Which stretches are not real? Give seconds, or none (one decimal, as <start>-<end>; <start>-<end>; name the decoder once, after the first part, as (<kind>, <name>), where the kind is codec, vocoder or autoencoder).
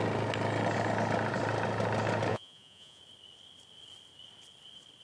2.3-3.0 (vocoder, Vocos)